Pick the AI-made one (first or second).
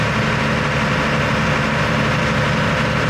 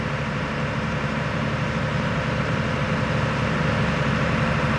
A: second